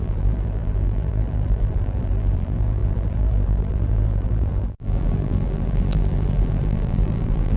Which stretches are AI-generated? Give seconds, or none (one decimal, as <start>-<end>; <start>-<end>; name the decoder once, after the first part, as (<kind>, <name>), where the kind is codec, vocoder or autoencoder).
0.0-7.6 (vocoder, BigVGAN v2)